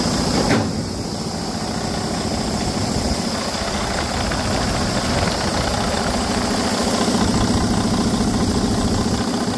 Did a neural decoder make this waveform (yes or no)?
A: no